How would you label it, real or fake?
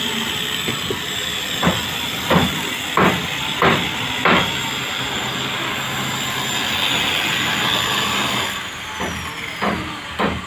real